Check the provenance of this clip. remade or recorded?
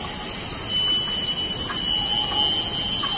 recorded